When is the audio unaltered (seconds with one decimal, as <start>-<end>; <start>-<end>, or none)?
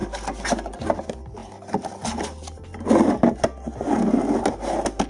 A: 0.0-5.1